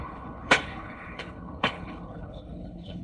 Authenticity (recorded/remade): remade